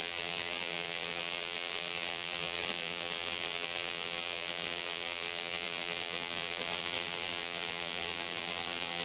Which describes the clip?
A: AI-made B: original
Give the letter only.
A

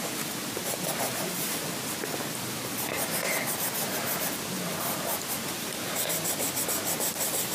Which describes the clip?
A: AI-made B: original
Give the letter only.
B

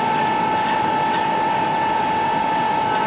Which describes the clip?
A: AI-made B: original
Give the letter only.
A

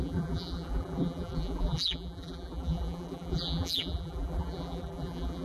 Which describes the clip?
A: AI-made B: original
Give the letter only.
A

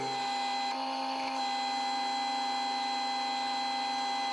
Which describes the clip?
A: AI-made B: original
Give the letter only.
B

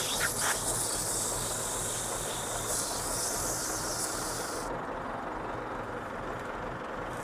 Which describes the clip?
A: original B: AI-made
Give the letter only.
A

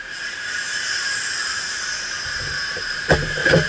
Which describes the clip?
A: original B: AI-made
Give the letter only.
B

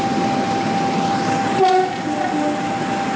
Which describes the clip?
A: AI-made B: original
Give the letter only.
B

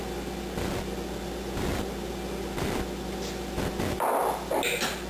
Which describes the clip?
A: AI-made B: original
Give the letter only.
B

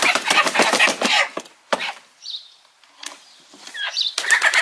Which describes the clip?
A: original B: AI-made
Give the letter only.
B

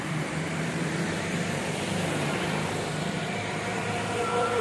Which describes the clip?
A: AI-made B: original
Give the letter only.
A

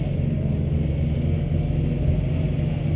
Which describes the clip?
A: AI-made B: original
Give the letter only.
B